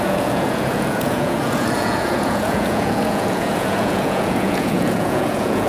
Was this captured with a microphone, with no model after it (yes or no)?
no